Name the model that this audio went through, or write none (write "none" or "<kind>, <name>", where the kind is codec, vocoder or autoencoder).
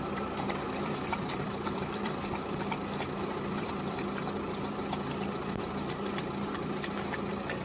vocoder, BigVGAN v2